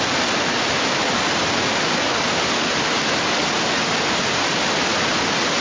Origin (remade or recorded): recorded